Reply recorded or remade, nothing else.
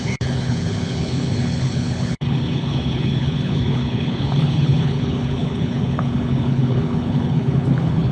remade